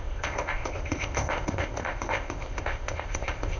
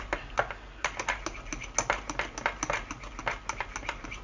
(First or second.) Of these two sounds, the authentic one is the second